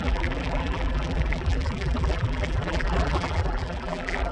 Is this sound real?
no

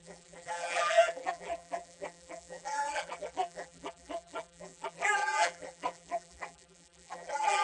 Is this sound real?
no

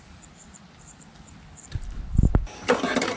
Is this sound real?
no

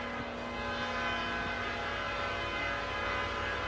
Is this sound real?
yes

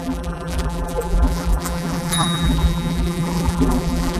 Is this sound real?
no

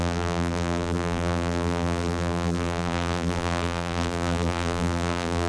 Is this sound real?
no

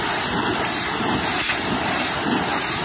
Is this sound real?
no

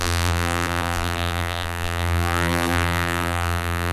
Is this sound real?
no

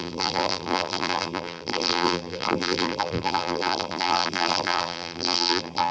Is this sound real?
no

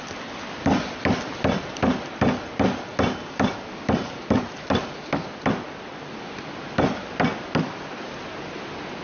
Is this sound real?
yes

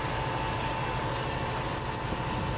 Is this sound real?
yes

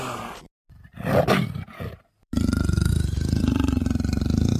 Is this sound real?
no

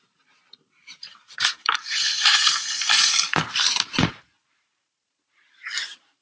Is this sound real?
no